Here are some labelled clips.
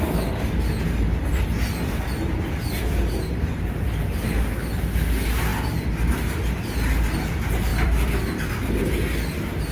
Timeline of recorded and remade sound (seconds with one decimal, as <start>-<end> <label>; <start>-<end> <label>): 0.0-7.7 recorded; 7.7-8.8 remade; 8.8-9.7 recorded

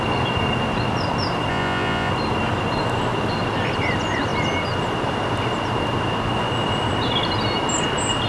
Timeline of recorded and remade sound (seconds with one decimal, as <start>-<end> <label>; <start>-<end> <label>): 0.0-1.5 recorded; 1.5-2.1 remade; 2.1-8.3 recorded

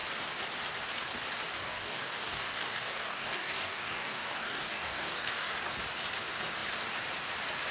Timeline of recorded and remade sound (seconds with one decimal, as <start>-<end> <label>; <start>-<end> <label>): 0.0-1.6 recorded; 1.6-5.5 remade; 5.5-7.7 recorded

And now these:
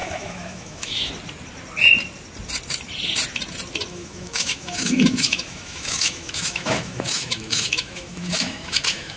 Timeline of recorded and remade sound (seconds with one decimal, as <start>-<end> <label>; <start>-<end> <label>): 0.0-1.1 remade; 1.1-3.9 recorded; 3.9-9.2 remade

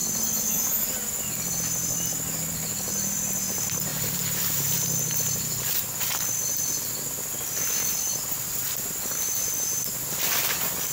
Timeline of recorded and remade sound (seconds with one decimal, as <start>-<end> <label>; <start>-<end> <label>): 0.0-10.9 recorded

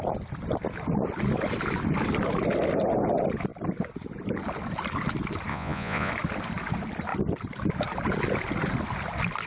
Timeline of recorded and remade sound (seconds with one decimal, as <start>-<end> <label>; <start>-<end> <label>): 0.0-5.5 recorded; 5.5-6.1 remade; 6.1-9.5 recorded

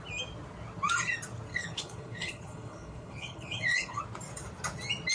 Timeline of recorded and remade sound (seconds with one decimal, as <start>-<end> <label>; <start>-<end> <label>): 0.0-1.5 recorded; 1.5-4.0 remade; 4.0-5.1 recorded